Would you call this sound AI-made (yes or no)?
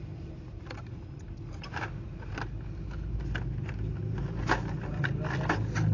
no